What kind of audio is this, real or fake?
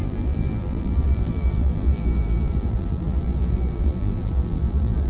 fake